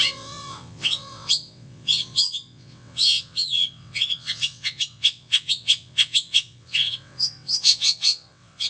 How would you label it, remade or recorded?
remade